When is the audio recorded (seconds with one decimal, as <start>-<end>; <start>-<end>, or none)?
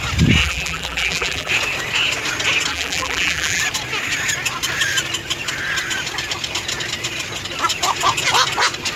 0.0-0.4; 1.5-2.7; 3.6-9.0